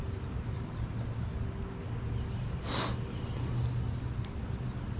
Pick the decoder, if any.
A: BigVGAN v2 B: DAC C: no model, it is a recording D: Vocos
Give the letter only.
C